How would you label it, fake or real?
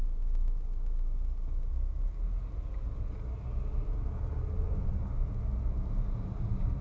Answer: real